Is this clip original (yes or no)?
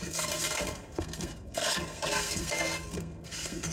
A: no